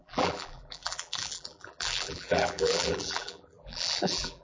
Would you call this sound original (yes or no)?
no